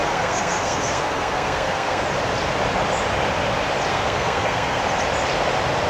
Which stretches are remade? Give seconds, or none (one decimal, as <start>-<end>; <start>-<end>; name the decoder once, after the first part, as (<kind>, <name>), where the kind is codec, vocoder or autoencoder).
0.0-2.0 (codec, SNAC); 3.9-4.8